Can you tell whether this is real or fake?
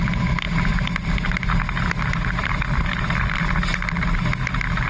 real